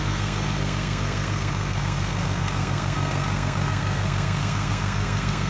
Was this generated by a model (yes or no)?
yes